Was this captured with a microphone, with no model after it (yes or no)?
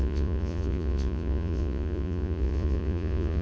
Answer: no